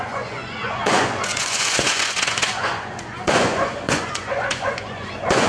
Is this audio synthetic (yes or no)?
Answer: yes